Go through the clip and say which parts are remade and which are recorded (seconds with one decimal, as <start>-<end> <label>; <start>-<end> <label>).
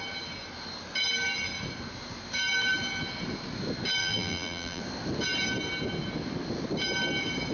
0.0-4.0 recorded; 4.0-4.8 remade; 4.8-7.5 recorded